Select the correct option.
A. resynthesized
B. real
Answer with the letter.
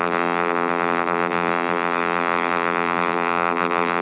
A